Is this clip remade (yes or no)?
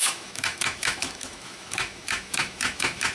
yes